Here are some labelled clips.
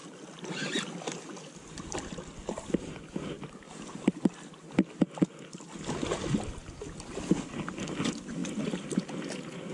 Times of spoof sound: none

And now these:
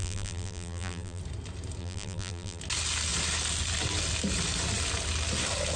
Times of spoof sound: 0.0-1.2 (vocoder, BigVGAN v2); 1.8-2.6

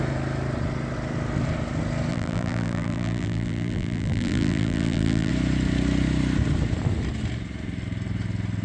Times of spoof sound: 2.1-5.3 (vocoder, BigVGAN v2)

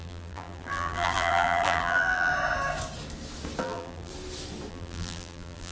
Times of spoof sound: 0.0-2.3 (vocoder, BigVGAN v2); 3.6-4.1; 4.7-5.7